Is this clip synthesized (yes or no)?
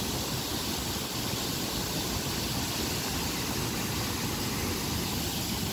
no